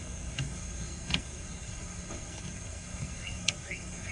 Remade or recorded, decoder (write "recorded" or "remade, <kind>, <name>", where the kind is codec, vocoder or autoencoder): remade, codec, SNAC